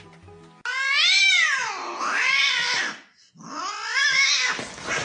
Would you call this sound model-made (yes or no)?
no